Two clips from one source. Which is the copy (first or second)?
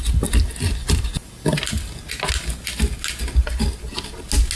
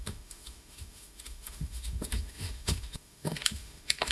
second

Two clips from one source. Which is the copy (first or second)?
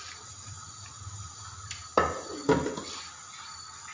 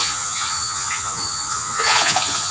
second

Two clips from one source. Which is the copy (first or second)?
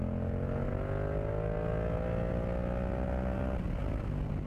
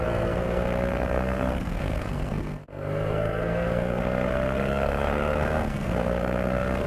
second